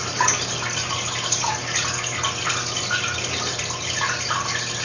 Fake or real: real